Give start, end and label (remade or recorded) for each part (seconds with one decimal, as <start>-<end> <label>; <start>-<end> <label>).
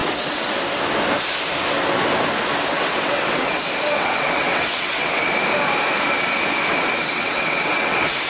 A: 0.0-0.6 remade; 0.6-2.7 recorded; 2.7-3.6 remade; 3.6-4.0 recorded; 4.0-5.2 remade; 5.2-7.0 recorded; 7.0-8.3 remade